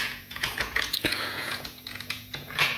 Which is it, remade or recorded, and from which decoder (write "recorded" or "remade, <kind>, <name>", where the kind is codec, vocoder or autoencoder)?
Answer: remade, vocoder, Vocos